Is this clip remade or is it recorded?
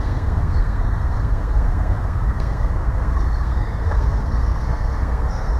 remade